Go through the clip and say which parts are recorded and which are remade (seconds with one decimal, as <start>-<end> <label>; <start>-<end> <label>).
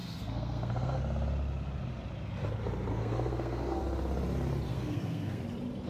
0.0-1.0 remade; 1.0-2.9 recorded; 2.9-3.8 remade; 3.8-4.7 recorded; 4.7-5.4 remade; 5.4-5.9 recorded